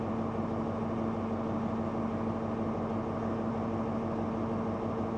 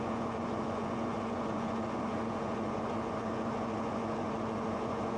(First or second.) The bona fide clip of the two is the first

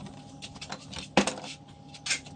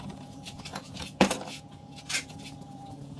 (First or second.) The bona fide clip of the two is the first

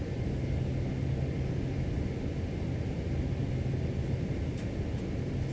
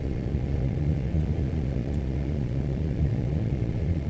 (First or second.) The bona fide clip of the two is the first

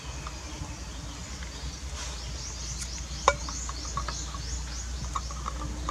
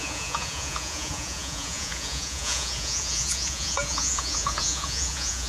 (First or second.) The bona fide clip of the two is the first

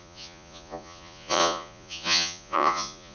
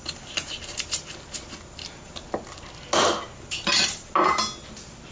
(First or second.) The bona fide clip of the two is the second